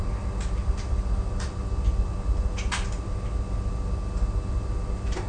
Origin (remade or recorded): recorded